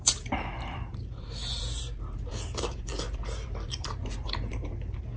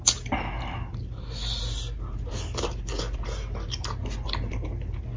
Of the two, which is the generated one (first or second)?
first